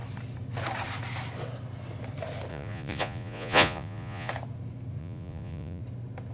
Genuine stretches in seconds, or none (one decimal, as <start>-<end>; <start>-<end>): 0.0-2.5; 4.3-5.0; 5.8-6.3